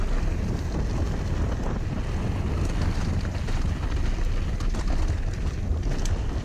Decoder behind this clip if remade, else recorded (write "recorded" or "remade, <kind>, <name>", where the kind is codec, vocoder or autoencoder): recorded